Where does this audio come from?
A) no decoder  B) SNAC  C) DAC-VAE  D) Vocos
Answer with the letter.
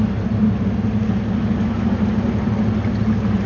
A